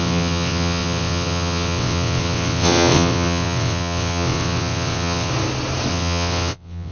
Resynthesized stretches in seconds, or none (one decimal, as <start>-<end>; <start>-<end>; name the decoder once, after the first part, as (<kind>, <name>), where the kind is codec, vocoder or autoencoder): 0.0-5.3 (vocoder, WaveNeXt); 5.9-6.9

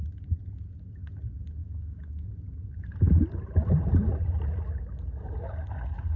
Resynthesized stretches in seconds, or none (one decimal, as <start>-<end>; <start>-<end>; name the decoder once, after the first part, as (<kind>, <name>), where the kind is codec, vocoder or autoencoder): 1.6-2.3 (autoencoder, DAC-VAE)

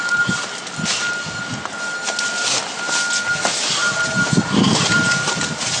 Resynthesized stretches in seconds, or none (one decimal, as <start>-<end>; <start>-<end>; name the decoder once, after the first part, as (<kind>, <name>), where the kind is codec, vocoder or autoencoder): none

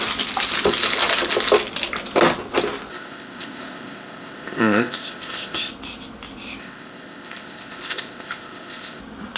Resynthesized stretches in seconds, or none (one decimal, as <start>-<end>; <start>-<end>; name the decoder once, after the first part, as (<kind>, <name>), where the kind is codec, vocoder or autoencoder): 2.9-5.7 (codec, ZipCodec); 6.6-9.0

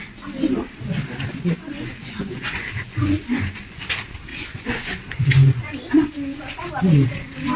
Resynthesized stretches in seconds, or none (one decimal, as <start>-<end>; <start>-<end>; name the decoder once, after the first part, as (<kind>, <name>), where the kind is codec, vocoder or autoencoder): 1.3-3.8 (vocoder, Vocos); 4.3-6.7

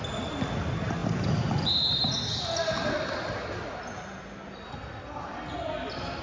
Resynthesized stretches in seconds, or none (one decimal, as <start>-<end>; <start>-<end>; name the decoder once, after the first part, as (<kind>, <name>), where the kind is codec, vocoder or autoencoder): none

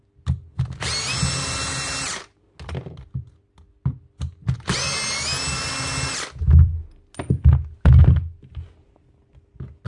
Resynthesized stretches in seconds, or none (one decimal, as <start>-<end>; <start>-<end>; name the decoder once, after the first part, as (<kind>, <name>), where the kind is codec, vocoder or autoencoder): none

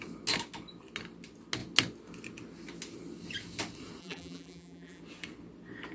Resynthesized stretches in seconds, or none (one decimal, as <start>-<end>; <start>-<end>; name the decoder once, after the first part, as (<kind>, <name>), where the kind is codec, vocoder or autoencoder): 4.0-5.0 (vocoder, BigVGAN v2)